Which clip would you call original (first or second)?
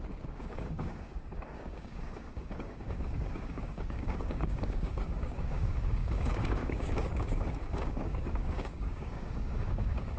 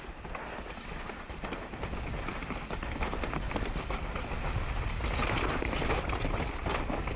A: second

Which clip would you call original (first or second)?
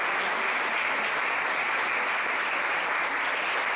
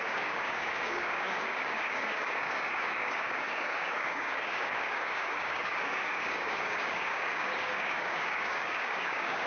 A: first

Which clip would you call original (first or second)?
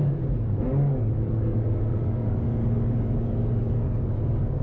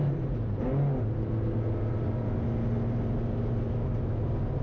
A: second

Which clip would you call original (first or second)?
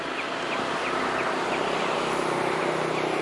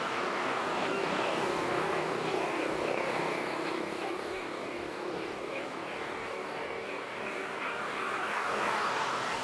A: first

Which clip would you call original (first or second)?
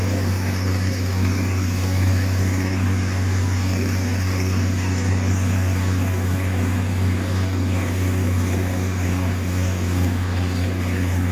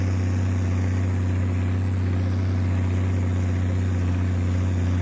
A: second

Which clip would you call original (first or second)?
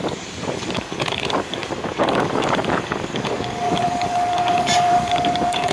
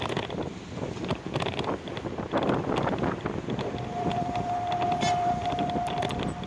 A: second